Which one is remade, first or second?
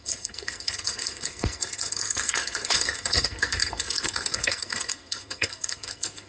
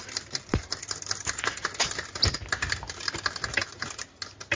first